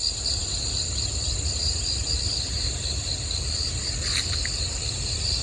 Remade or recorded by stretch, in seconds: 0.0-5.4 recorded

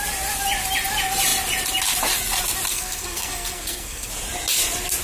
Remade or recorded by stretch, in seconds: 0.0-2.7 recorded; 2.7-4.1 remade; 4.1-5.0 recorded

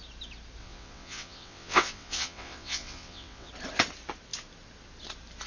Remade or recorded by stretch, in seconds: 0.0-0.6 recorded; 0.6-3.5 remade; 3.5-5.5 recorded